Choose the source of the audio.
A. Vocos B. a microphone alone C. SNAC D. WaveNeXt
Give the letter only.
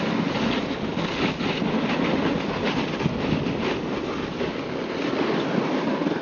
B